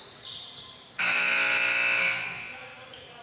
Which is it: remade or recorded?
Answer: recorded